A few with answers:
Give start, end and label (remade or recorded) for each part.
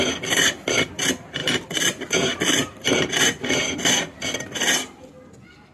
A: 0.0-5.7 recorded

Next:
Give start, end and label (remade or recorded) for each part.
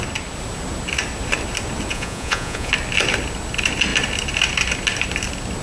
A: 0.0-1.9 recorded; 1.9-2.7 remade; 2.7-5.6 recorded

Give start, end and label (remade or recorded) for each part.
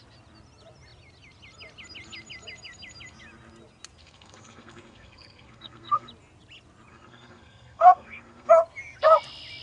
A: 0.0-4.0 recorded; 4.0-6.1 remade; 6.1-6.9 recorded; 6.9-8.5 remade; 8.5-9.6 recorded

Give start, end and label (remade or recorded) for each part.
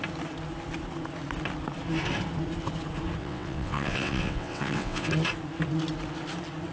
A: 0.0-3.2 recorded; 3.2-5.1 remade; 5.1-6.7 recorded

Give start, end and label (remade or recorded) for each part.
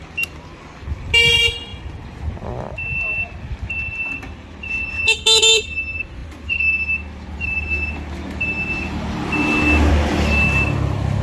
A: 0.0-11.2 recorded